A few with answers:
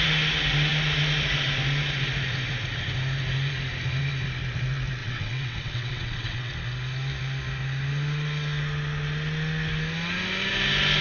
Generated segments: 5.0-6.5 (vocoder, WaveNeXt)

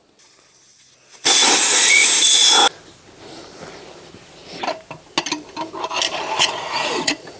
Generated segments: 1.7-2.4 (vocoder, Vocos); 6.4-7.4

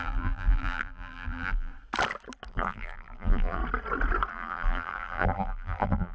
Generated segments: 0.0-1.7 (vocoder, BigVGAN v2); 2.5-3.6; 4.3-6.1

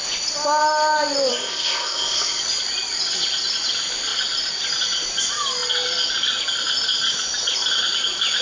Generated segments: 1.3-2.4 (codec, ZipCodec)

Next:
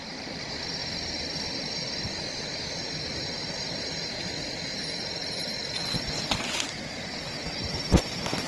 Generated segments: none

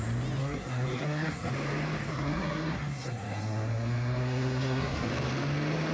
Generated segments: 0.4-1.5 (codec, SNAC); 2.1-5.1

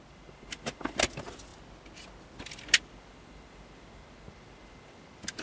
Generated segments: none

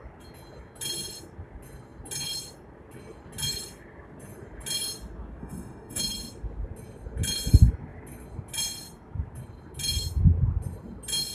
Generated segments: 5.4-6.0 (autoencoder, DAC-VAE)